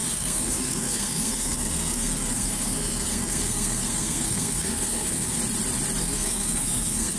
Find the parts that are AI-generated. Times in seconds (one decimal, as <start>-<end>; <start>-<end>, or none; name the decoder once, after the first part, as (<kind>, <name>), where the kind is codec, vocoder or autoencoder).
0.0-5.4 (codec, SNAC); 6.0-7.2